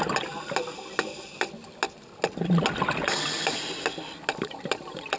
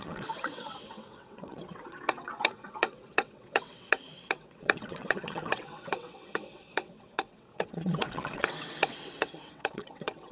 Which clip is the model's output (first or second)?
second